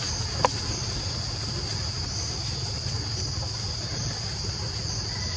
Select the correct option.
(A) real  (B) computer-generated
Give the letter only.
A